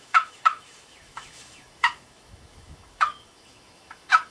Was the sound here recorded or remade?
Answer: remade